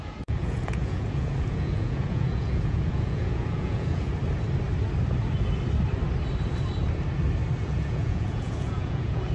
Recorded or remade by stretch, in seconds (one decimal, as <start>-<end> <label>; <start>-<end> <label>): 0.0-4.1 remade; 4.1-7.6 recorded; 7.6-9.3 remade